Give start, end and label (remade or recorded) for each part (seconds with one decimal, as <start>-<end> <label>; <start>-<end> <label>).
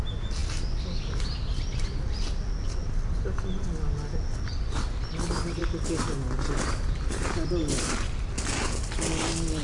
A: 0.0-9.6 recorded